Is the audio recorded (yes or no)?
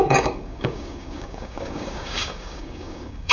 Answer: no